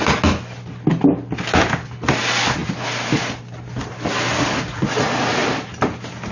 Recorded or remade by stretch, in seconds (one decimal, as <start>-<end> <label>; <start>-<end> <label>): 0.0-6.3 recorded